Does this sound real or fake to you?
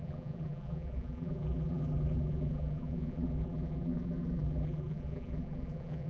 fake